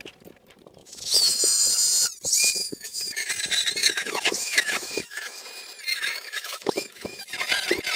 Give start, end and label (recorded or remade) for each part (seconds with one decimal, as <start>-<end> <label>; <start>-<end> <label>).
0.0-0.8 recorded; 0.8-1.7 remade; 1.7-2.6 recorded; 2.6-3.3 remade; 3.3-3.8 recorded; 3.8-5.4 remade; 5.4-5.9 recorded; 5.9-7.3 remade; 7.3-8.0 recorded